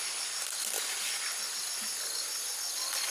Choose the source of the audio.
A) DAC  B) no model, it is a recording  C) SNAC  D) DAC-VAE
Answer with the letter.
B